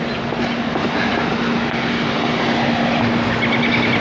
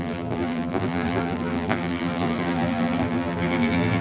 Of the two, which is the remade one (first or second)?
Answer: second